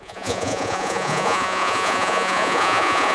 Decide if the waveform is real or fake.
fake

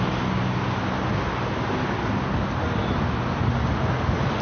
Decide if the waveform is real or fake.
real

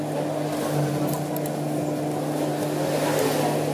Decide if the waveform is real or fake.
real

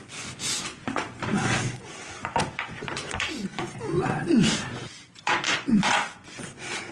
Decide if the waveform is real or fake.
fake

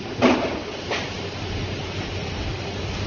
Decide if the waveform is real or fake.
real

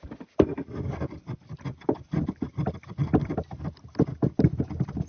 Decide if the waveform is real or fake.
real